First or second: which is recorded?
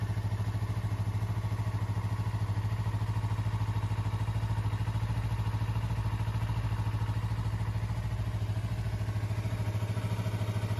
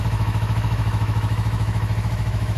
first